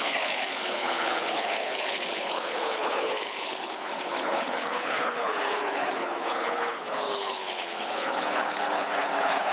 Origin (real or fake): fake